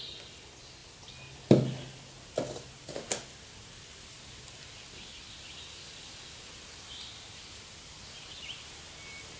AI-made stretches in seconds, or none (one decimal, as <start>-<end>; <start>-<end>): none